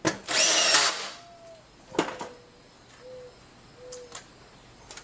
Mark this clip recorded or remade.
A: recorded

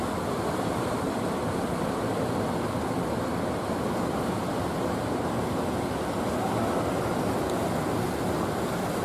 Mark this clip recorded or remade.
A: recorded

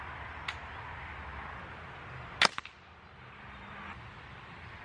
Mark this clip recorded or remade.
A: recorded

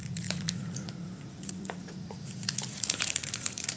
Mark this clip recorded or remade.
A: remade